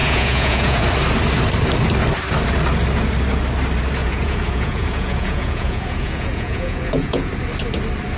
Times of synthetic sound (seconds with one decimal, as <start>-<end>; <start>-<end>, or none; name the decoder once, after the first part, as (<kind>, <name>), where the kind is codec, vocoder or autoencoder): 0.0-0.8 (vocoder, Vocos); 4.0-7.3